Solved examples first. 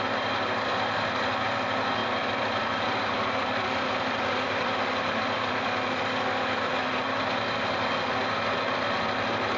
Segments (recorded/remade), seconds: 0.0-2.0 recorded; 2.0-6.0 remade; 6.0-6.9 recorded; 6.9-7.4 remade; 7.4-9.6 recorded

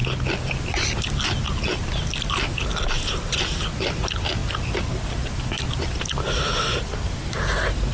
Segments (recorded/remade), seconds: 0.0-7.9 recorded

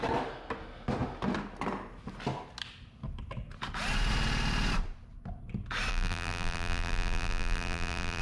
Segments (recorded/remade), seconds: 0.0-5.9 recorded; 5.9-8.2 remade